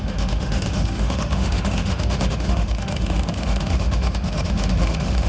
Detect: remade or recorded remade